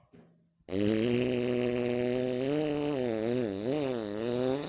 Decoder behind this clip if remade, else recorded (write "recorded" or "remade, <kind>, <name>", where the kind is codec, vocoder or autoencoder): recorded